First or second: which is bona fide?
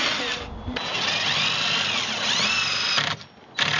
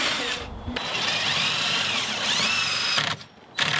first